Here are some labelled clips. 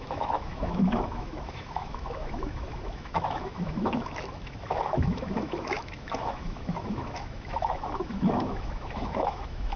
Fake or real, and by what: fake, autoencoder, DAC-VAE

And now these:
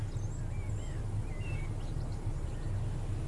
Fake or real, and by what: real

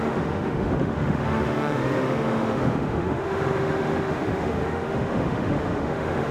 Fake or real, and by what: fake, autoencoder, DAC-VAE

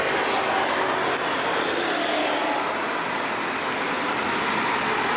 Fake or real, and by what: real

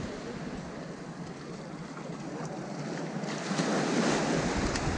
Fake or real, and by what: real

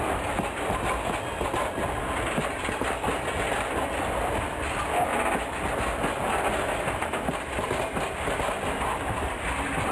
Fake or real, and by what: real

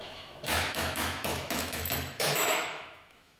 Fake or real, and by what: fake, autoencoder, DAC-VAE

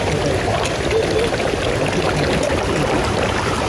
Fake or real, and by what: real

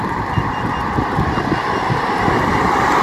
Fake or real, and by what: real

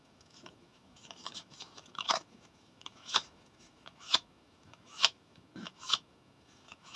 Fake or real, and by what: fake, autoencoder, DAC-VAE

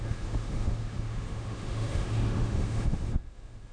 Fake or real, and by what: fake, autoencoder, DAC-VAE